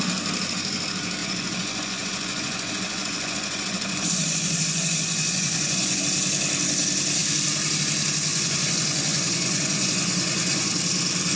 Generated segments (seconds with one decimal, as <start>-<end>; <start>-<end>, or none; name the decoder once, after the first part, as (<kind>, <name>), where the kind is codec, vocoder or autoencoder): 1.2-6.0 (vocoder, Vocos); 8.3-10.7

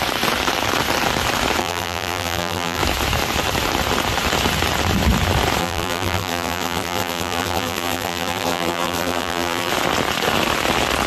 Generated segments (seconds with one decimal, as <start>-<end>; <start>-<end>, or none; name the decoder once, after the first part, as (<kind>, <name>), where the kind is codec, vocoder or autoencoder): 1.6-2.8 (vocoder, BigVGAN v2); 5.6-9.7

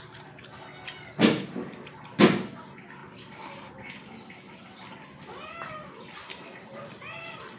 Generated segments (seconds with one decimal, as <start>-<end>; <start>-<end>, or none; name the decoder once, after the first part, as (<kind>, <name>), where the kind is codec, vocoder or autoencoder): none